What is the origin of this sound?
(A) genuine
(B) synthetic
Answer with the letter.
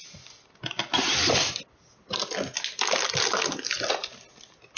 A